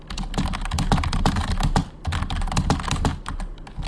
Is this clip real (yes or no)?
yes